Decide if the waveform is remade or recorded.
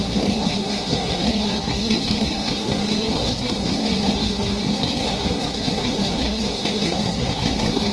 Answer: remade